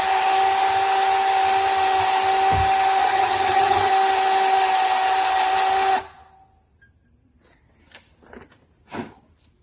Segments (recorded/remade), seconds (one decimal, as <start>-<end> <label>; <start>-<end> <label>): 0.0-3.0 recorded; 3.0-3.9 remade; 3.9-9.6 recorded